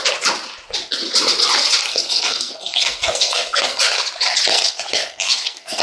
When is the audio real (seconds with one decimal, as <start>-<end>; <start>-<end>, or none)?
0.0-1.9; 3.8-4.5